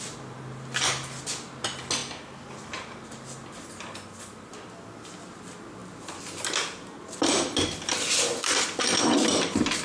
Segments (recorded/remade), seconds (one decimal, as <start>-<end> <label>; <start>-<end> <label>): 0.0-9.8 recorded